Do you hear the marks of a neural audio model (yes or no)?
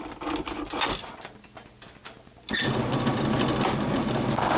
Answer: no